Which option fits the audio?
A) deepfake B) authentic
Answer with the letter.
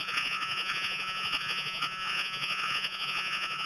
A